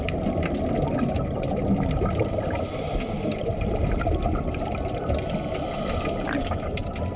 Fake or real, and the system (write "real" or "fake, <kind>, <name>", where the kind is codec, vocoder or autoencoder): real